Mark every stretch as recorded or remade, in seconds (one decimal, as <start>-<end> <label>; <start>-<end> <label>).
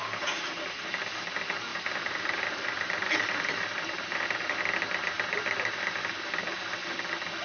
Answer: 0.0-1.7 recorded; 1.7-4.6 remade; 4.6-7.4 recorded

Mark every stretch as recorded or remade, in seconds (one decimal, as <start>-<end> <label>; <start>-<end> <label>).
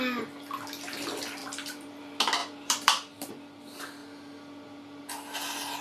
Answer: 0.0-1.4 recorded; 1.4-2.0 remade; 2.0-2.4 recorded; 2.4-3.3 remade; 3.3-5.8 recorded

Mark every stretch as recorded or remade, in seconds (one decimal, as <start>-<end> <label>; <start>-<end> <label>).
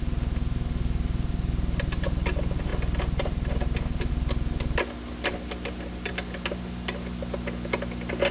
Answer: 0.0-8.3 recorded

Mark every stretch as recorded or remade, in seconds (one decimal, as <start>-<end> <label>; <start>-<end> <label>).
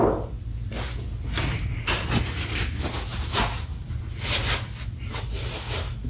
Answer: 0.0-3.1 recorded; 3.1-3.9 remade; 3.9-6.1 recorded